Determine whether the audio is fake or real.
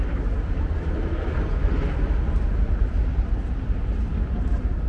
real